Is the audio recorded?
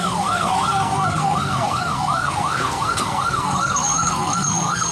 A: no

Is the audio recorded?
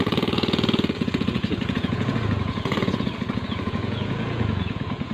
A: no